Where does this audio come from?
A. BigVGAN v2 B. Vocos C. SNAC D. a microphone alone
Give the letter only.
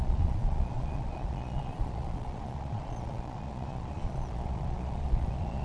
B